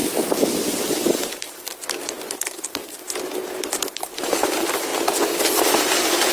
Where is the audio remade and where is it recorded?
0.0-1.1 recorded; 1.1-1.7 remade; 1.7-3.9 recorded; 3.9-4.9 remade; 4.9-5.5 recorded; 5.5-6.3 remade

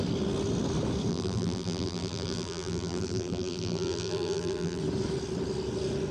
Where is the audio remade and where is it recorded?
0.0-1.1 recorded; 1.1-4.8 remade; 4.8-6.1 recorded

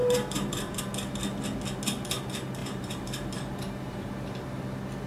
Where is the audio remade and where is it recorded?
0.0-0.8 remade; 0.8-2.6 recorded; 2.6-4.1 remade; 4.1-5.1 recorded